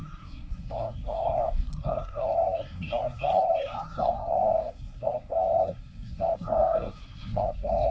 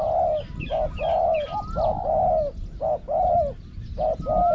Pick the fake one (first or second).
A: first